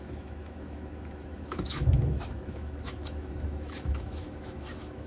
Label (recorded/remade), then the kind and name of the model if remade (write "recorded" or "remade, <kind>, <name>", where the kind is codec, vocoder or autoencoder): remade, autoencoder, DAC-VAE